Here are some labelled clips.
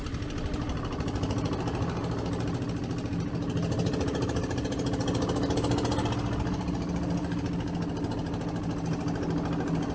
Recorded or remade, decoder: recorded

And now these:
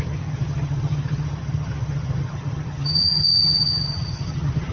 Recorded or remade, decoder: remade, vocoder, HiFi-GAN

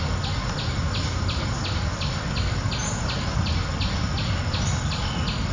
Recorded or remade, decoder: recorded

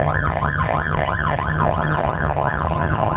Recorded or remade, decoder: remade, vocoder, HiFi-GAN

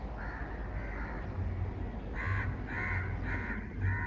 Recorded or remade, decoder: recorded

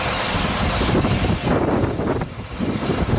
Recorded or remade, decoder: recorded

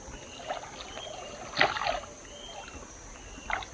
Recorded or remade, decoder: recorded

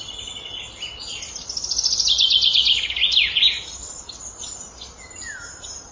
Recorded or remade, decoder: recorded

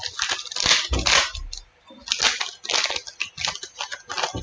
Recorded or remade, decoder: recorded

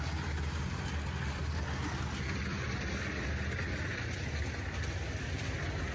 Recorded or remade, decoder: recorded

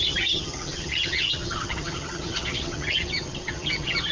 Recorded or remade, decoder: remade, vocoder, HiFi-GAN